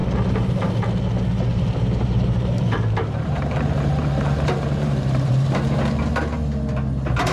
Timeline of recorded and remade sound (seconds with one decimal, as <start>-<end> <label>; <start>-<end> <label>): 0.0-0.7 remade; 0.7-1.5 recorded; 1.5-5.8 remade; 5.8-7.3 recorded